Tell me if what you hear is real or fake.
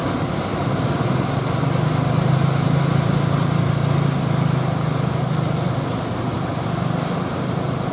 real